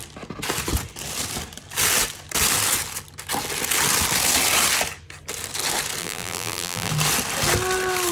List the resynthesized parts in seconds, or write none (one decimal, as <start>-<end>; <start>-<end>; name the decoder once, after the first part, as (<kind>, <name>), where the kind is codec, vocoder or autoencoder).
6.0-6.9 (vocoder, BigVGAN v2)